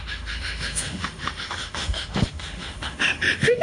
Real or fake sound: fake